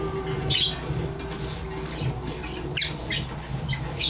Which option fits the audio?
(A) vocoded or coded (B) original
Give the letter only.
B